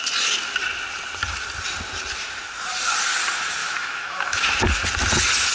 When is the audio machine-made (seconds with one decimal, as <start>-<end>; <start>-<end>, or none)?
3.6-4.6